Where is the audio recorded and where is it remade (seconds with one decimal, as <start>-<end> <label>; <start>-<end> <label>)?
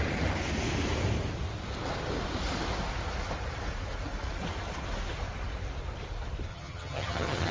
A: 0.0-6.5 recorded; 6.5-7.5 remade